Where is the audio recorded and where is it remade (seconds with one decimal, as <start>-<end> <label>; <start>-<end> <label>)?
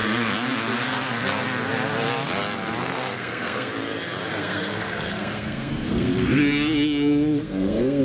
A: 0.0-2.8 recorded; 2.8-3.7 remade; 3.7-4.3 recorded; 4.3-8.0 remade